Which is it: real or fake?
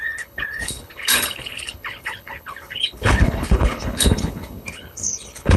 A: fake